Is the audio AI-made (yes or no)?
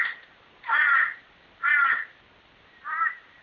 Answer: no